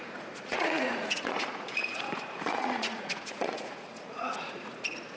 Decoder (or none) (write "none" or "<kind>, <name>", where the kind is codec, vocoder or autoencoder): vocoder, Vocos